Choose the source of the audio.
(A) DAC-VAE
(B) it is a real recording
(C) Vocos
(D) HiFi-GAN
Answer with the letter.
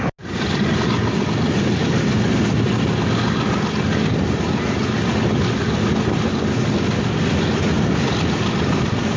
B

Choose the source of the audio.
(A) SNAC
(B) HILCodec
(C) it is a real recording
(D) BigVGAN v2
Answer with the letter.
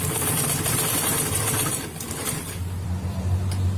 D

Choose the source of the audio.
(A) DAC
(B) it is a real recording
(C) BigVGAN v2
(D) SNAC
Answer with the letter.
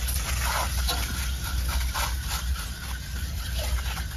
B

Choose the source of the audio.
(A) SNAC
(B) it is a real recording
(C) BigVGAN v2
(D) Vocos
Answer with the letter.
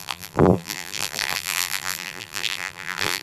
C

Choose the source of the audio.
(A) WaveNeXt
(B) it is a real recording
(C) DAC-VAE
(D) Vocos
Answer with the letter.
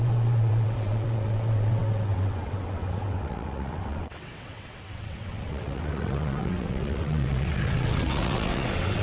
A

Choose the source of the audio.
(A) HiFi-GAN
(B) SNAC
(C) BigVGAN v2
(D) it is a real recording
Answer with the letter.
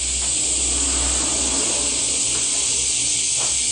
D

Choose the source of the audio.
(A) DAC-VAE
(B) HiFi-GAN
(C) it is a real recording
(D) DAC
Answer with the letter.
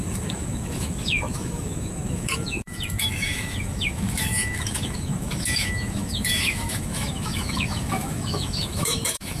A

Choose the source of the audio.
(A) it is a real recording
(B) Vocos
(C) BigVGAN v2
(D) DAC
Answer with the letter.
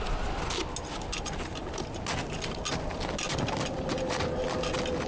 A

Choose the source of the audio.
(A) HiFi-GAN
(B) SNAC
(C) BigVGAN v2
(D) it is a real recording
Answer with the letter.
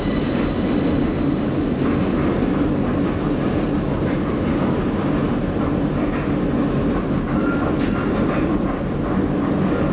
D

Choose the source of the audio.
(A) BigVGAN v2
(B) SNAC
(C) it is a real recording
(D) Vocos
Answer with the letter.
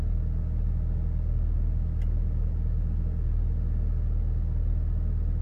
C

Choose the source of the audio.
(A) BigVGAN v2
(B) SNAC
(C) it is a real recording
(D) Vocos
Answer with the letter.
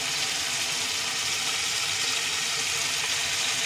C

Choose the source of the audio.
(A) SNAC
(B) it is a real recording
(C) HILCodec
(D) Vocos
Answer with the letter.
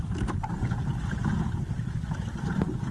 B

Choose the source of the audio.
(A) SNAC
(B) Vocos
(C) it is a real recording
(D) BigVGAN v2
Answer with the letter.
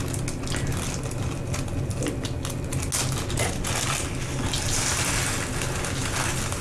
C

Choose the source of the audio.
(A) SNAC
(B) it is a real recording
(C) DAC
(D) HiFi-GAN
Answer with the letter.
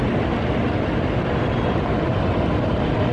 B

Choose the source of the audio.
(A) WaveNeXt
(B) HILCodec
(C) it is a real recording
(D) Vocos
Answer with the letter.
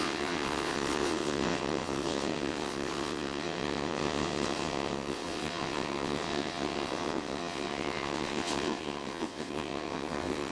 A